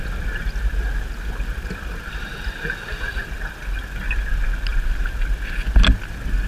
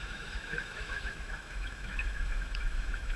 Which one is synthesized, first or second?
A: second